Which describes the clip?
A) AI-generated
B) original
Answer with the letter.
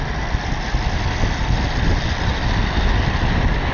B